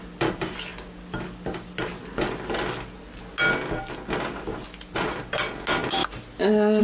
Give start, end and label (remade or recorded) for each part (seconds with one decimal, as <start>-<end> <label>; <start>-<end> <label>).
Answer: 0.0-6.8 recorded